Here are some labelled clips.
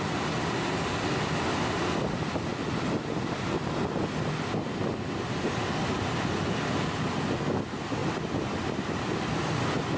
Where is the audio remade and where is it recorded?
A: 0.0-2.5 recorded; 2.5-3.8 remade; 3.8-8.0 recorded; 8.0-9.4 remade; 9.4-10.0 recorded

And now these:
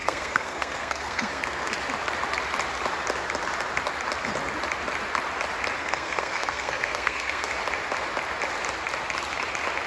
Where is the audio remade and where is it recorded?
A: 0.0-1.7 remade; 1.7-5.8 recorded; 5.8-7.5 remade; 7.5-9.9 recorded

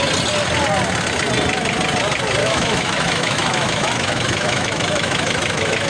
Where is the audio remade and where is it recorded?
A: 0.0-2.4 recorded; 2.4-5.9 remade

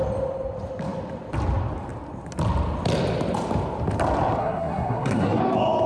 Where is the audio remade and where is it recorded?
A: 0.0-4.4 recorded; 4.4-5.4 remade; 5.4-5.9 recorded